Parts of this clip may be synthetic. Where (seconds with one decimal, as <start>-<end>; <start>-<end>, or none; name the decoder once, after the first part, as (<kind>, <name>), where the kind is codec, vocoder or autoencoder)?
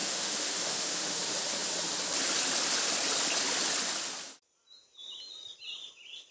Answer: 0.0-1.2 (autoencoder, DAC-VAE)